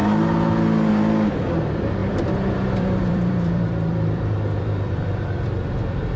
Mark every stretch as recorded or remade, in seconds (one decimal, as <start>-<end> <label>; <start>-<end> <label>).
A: 0.0-2.0 recorded; 2.0-5.7 remade; 5.7-6.2 recorded